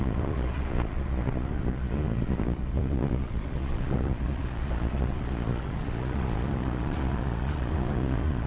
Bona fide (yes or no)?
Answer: no